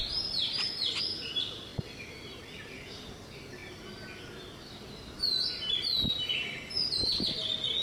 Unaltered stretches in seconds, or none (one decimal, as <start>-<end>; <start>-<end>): 0.0-7.8